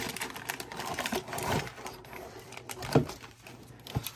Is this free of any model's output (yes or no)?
no